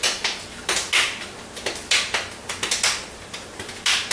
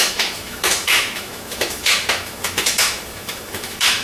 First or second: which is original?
first